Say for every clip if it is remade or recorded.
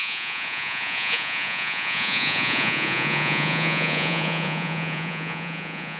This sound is remade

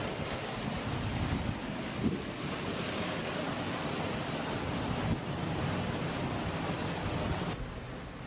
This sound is recorded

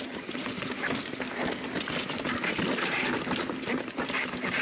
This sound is recorded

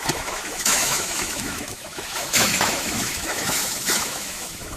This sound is remade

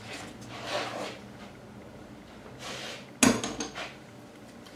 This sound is recorded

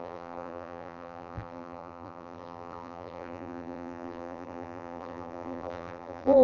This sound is remade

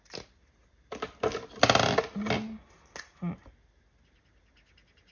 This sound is recorded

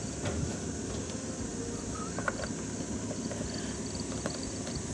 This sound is recorded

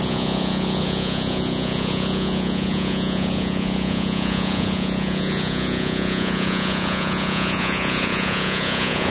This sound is remade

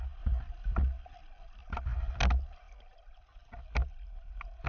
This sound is recorded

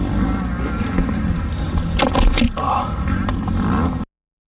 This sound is recorded